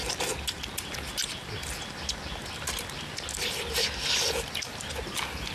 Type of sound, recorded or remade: recorded